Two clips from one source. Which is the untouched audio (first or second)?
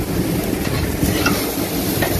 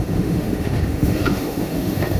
first